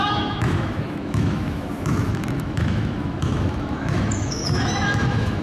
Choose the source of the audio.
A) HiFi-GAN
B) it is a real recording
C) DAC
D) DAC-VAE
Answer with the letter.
D